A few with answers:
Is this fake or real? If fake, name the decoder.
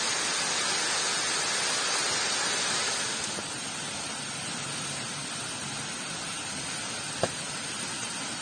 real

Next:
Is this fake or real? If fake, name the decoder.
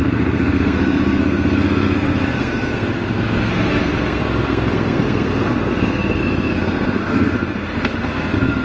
fake, codec, SNAC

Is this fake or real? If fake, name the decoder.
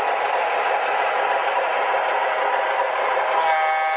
real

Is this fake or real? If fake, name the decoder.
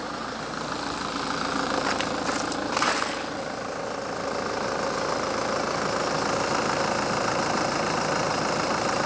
real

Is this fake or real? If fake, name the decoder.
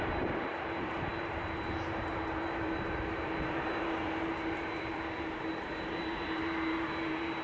fake, vocoder, BigVGAN v2